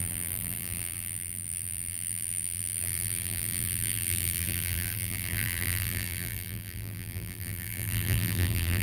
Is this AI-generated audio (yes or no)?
yes